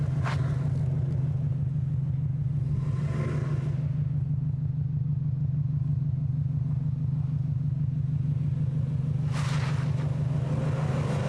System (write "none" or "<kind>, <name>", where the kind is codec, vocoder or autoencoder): none